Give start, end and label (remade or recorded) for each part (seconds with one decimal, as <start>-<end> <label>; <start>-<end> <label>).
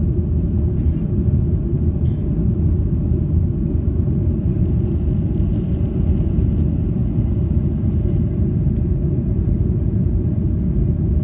0.0-11.2 recorded